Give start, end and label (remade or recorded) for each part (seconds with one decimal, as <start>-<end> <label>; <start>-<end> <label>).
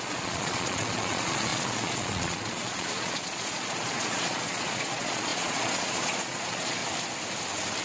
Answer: 0.0-6.8 remade; 6.8-7.8 recorded